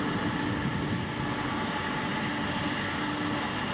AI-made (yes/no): no